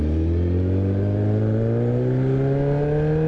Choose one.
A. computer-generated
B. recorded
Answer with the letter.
B